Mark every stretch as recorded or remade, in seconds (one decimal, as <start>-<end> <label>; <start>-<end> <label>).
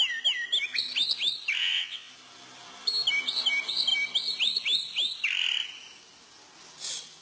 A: 0.0-1.6 recorded; 1.6-2.1 remade; 2.1-7.2 recorded